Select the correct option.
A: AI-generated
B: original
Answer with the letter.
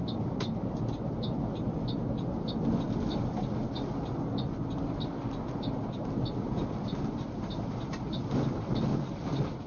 B